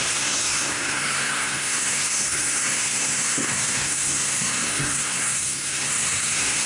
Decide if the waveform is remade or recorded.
remade